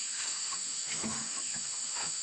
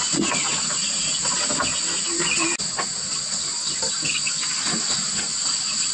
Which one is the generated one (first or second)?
first